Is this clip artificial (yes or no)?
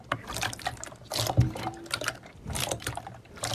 no